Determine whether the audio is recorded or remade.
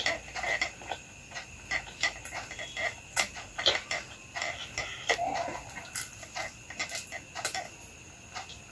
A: recorded